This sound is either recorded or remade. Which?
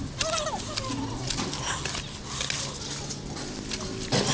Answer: recorded